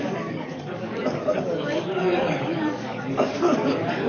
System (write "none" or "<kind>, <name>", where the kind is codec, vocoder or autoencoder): codec, DAC